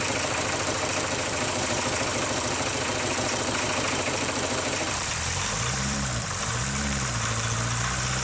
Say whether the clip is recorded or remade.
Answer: remade